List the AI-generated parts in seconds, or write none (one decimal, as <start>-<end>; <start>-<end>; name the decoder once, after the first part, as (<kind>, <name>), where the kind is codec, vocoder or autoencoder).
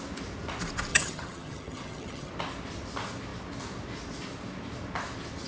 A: 0.9-2.3 (vocoder, HiFi-GAN)